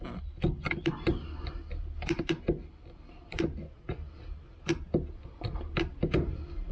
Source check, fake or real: real